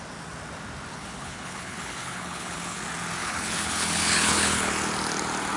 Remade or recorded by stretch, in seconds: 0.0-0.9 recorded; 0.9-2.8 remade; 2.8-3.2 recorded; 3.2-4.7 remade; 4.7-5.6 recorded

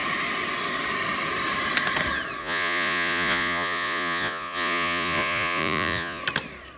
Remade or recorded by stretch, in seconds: 0.0-2.4 recorded; 2.4-6.2 remade; 6.2-6.8 recorded

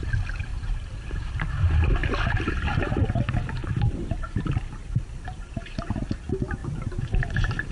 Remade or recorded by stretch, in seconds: 0.0-0.5 recorded; 0.5-1.3 remade; 1.3-3.6 recorded; 3.6-4.4 remade; 4.4-6.6 recorded; 6.6-7.7 remade

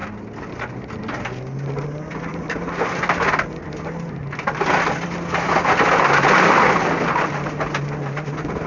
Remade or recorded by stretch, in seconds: 0.0-8.7 recorded

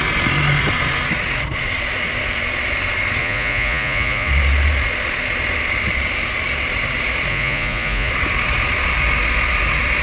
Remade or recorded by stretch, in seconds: 0.0-3.2 recorded; 3.2-4.3 remade; 4.3-7.3 recorded; 7.3-8.1 remade; 8.1-10.0 recorded

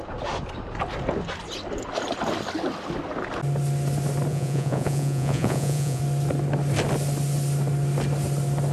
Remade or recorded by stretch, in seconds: 0.0-4.3 recorded; 4.3-6.0 remade; 6.0-8.7 recorded

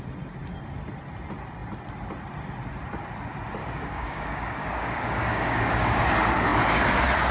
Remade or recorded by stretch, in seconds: 0.0-3.6 recorded; 3.6-6.0 remade; 6.0-7.3 recorded